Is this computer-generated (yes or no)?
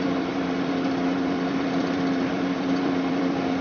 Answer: yes